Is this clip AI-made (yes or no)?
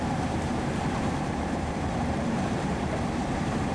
yes